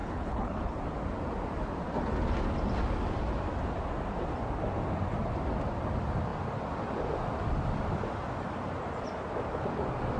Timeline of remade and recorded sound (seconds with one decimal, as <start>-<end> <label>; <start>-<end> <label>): 0.0-0.8 remade; 0.8-10.2 recorded